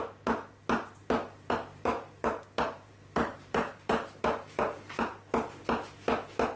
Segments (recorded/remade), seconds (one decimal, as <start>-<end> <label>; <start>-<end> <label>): 0.0-1.0 recorded; 1.0-5.0 remade; 5.0-6.6 recorded